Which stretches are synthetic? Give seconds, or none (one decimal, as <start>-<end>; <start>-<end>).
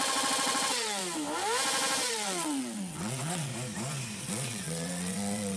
0.0-1.0; 2.1-3.5; 4.2-5.6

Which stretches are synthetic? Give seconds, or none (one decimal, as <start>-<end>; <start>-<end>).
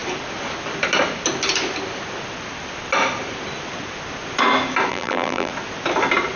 4.9-5.5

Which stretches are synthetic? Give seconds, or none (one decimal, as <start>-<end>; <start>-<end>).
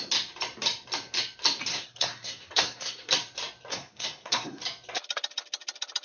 1.7-3.1; 3.7-4.6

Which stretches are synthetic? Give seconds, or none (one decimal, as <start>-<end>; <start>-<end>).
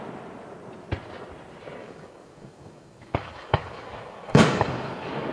1.8-5.3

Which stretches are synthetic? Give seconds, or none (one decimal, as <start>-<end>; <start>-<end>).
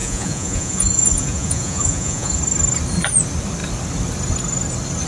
0.0-2.4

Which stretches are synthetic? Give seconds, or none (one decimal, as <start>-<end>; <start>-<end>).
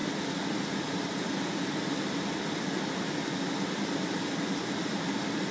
none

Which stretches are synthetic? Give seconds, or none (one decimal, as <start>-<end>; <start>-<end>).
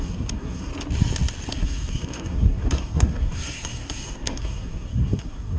0.0-0.7; 1.5-5.6